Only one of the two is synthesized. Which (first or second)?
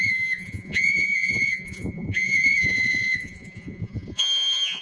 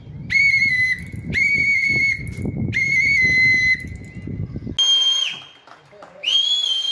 first